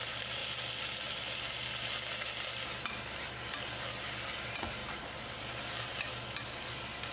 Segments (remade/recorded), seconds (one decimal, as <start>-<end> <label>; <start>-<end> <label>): 0.0-7.1 recorded